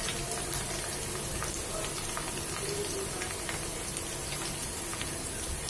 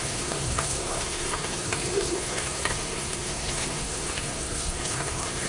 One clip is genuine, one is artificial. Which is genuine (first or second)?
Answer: first